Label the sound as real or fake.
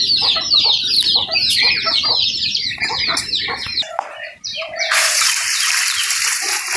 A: fake